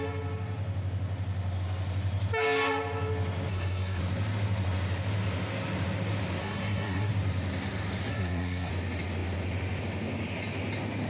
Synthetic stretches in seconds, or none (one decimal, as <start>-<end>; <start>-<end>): 3.5-4.0; 6.4-7.1; 8.1-8.7